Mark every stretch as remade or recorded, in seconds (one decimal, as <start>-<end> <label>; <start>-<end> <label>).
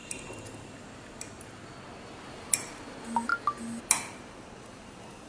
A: 0.0-5.3 recorded